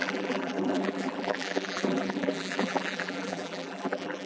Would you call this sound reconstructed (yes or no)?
yes